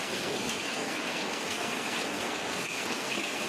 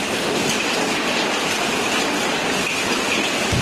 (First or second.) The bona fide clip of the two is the second